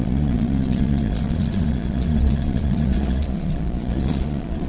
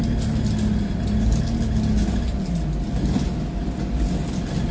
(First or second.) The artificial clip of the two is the first